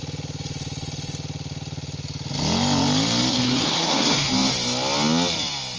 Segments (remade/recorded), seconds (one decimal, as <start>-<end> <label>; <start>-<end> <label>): 0.0-3.3 recorded; 3.3-4.3 remade; 4.3-5.8 recorded